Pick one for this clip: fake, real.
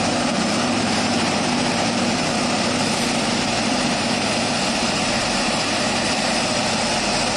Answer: fake